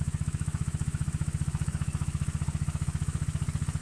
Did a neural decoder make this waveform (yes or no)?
yes